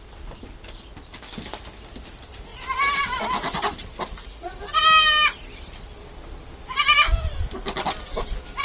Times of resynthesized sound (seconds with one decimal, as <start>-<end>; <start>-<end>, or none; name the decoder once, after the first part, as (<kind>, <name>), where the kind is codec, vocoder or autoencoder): 4.1-4.6 (vocoder, Vocos)